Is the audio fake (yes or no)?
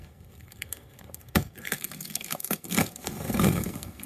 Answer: yes